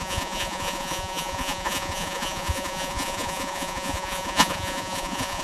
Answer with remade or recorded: remade